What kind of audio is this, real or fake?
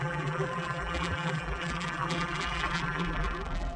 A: fake